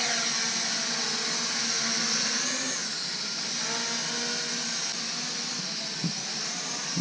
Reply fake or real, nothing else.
real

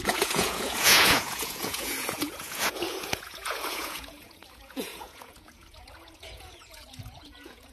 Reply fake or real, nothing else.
fake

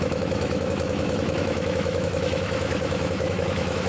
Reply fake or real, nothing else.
fake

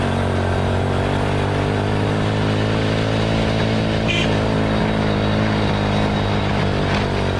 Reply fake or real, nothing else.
real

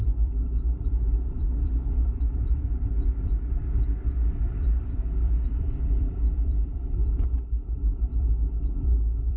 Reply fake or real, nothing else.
fake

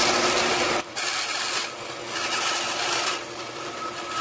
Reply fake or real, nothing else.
real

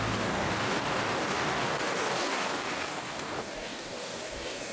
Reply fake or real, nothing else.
fake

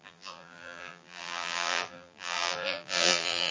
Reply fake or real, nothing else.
fake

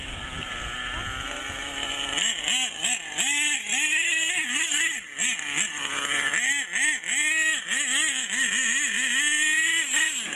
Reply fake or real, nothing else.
real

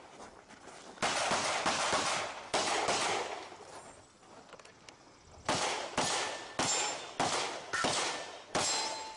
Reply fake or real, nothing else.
real